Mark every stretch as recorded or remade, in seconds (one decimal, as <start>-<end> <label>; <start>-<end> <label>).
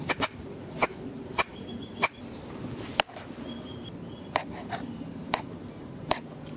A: 0.0-6.6 recorded